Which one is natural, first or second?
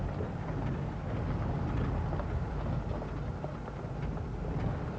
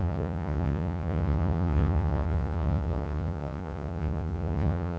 first